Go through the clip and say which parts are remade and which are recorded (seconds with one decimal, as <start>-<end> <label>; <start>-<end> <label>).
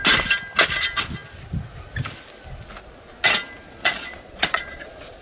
0.0-3.8 recorded; 3.8-5.2 remade